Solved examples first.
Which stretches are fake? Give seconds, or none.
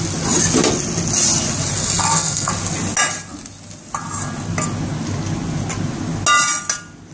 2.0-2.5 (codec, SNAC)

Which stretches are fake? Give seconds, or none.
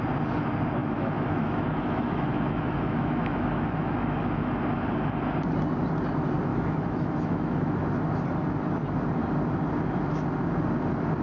0.8-4.5 (autoencoder, DAC-VAE); 6.5-7.8